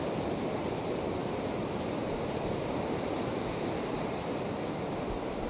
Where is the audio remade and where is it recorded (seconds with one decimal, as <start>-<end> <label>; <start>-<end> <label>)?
0.0-5.5 recorded